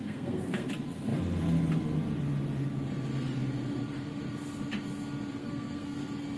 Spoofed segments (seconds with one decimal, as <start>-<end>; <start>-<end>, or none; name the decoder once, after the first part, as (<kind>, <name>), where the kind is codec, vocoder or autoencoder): 0.0-0.7 (codec, SNAC); 5.4-6.0